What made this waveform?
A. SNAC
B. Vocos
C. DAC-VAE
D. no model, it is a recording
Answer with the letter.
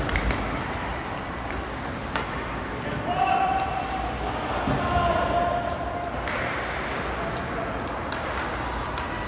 D